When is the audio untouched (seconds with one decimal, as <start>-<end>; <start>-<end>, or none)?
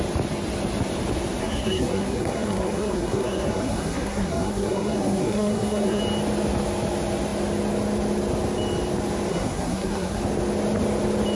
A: 0.0-1.4; 6.0-9.3; 10.2-11.3